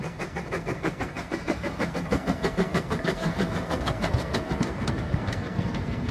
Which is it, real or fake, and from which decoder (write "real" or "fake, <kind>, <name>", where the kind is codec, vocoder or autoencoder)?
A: fake, codec, SNAC